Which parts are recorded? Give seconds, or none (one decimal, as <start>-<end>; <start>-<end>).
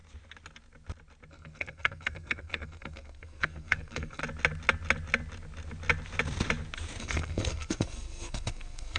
0.0-1.3; 4.2-7.0